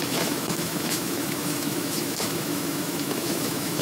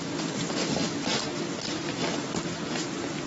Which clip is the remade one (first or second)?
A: first